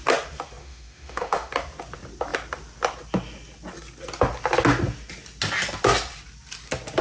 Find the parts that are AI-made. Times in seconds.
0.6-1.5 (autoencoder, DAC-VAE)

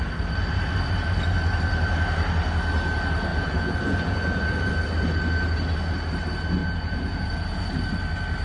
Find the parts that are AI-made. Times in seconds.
3.3-4.7 (vocoder, Vocos); 6.6-7.6

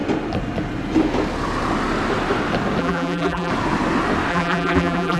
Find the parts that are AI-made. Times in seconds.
2.8-3.5 (vocoder, BigVGAN v2); 4.3-5.2

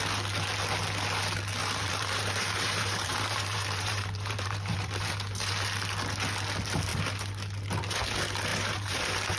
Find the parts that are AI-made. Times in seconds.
1.6-5.1 (vocoder, BigVGAN v2); 8.5-9.4

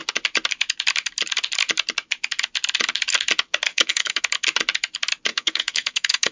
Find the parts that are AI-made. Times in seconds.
3.7-4.2 (codec, SNAC); 5.3-6.3

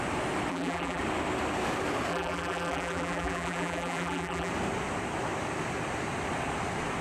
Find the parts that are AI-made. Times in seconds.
0.5-1.0 (vocoder, BigVGAN v2); 2.1-4.5

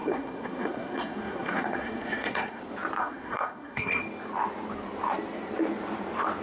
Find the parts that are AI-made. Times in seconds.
0.0-2.6 (codec, SNAC); 3.0-4.0